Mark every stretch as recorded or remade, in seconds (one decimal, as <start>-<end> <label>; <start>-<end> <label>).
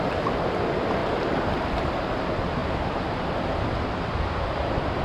0.0-1.0 recorded; 1.0-1.9 remade; 1.9-2.6 recorded; 2.6-3.2 remade; 3.2-5.0 recorded